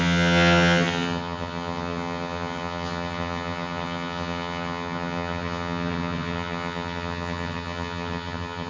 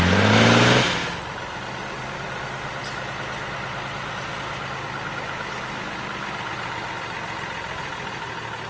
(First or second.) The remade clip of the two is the first